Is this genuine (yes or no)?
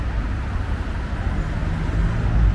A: yes